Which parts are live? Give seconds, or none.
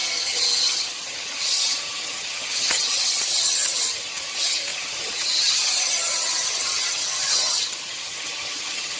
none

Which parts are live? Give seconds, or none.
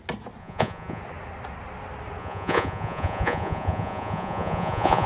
0.0-0.4; 1.0-2.2